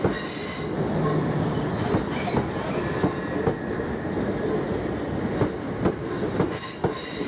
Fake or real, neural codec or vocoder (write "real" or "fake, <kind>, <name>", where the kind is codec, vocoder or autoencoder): real